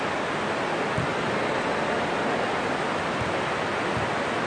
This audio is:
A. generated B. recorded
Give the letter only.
B